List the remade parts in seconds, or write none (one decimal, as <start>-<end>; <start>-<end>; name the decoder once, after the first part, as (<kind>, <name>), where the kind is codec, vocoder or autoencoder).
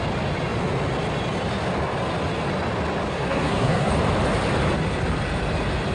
3.1-3.9 (codec, SNAC)